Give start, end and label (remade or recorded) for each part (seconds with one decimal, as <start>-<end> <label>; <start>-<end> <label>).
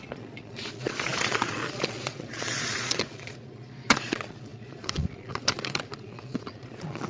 0.0-7.1 remade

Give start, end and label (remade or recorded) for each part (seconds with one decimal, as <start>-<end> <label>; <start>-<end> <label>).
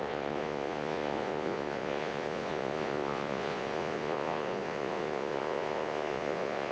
0.0-6.7 remade